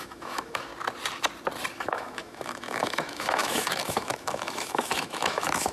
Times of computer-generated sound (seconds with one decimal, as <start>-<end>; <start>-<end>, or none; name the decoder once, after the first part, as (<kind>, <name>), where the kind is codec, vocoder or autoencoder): 0.0-0.7 (autoencoder, DAC-VAE); 1.7-5.7